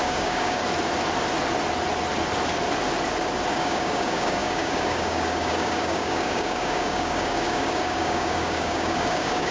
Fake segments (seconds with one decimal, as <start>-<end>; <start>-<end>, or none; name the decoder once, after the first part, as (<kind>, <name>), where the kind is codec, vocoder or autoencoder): 0.0-0.6 (codec, DAC); 3.5-9.5